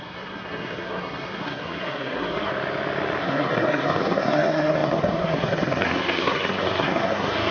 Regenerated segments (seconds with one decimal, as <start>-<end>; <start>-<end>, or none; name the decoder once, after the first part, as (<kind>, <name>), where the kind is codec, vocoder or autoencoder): 0.0-2.5 (codec, SNAC); 3.2-7.5